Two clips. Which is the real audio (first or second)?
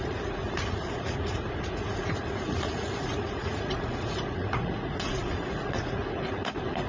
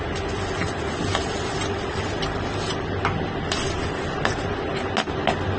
second